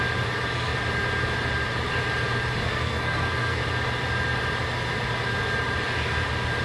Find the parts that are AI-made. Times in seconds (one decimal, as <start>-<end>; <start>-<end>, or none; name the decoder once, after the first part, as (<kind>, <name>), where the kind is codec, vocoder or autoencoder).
2.6-3.6 (codec, SNAC)